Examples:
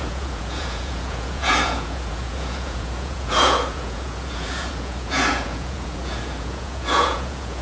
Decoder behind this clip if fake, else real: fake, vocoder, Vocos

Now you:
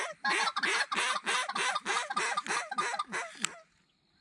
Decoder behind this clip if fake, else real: real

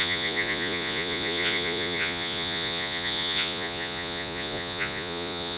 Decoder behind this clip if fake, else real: fake, vocoder, Vocos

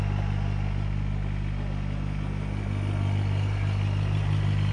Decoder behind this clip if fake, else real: real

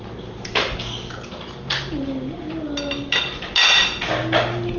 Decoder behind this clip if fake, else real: real